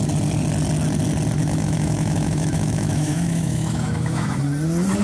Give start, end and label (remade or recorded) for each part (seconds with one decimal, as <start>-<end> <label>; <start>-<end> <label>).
0.0-1.4 recorded; 1.4-4.4 remade; 4.4-5.0 recorded